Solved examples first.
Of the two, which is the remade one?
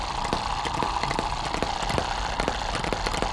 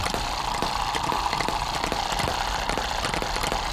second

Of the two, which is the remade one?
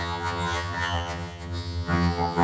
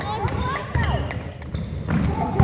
first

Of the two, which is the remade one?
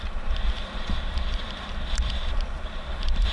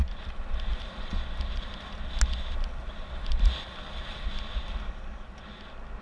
first